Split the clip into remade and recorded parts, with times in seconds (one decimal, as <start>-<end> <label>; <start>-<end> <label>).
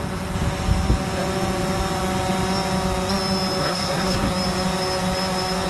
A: 0.0-3.6 recorded; 3.6-4.3 remade; 4.3-5.7 recorded